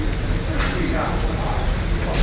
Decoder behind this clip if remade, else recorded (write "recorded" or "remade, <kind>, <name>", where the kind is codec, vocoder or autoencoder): recorded